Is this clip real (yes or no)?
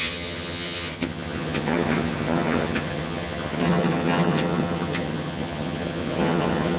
no